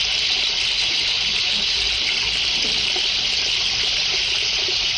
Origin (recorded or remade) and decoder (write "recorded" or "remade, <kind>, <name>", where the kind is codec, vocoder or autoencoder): recorded